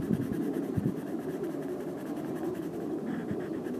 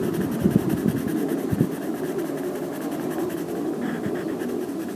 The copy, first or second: first